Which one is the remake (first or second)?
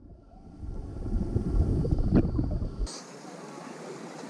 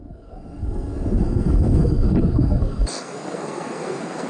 second